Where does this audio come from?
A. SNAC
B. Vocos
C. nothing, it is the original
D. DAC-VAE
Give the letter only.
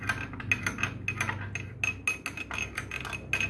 C